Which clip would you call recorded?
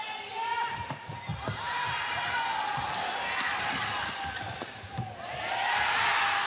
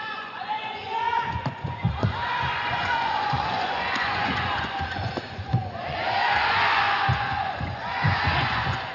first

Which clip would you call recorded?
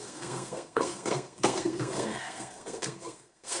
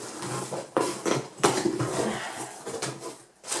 second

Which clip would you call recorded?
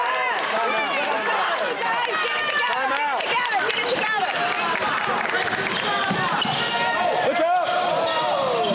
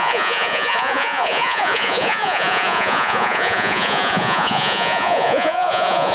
first